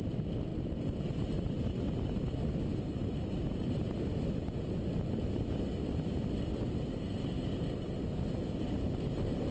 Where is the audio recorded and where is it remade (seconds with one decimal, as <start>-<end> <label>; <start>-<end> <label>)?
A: 0.0-0.5 recorded; 0.5-1.5 remade; 1.5-9.5 recorded